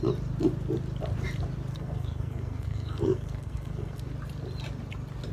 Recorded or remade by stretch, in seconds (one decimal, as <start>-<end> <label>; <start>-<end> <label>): 0.0-1.7 recorded; 1.7-4.0 remade; 4.0-5.3 recorded